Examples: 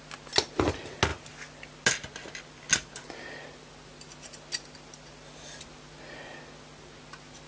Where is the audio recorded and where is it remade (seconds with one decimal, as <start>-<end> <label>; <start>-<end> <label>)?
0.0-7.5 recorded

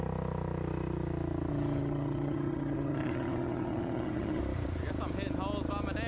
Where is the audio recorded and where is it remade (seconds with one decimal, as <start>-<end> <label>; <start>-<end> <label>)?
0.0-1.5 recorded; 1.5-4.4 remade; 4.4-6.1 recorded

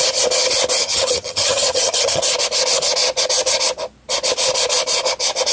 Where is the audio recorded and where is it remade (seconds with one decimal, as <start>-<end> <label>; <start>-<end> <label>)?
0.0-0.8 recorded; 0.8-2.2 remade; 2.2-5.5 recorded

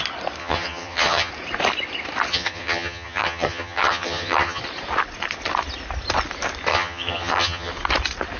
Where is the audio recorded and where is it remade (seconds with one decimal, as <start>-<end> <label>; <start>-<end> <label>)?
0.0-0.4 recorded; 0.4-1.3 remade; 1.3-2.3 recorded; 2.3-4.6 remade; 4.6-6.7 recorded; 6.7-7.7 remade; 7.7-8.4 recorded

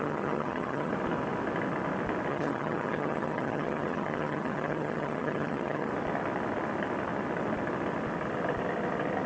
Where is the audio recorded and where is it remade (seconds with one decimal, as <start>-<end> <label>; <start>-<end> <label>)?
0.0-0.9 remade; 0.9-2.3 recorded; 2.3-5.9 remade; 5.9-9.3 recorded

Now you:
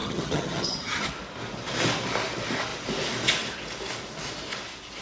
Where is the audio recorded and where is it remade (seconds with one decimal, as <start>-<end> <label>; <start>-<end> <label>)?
0.0-1.1 remade; 1.1-5.0 recorded